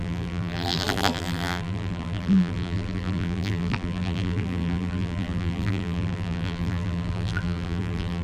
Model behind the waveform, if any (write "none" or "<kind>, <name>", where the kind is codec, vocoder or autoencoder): vocoder, BigVGAN v2